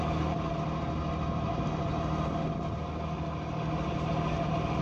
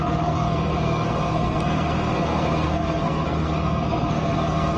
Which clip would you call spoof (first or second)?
second